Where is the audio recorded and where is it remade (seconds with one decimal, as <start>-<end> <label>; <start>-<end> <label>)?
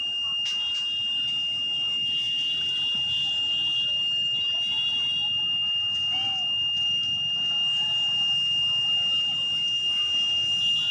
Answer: 0.0-10.9 recorded